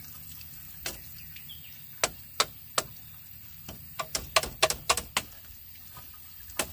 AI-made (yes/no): no